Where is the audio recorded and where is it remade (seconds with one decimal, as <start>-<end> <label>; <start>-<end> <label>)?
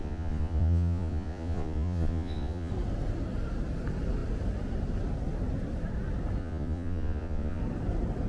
0.0-2.7 remade; 2.7-6.4 recorded; 6.4-7.6 remade; 7.6-8.3 recorded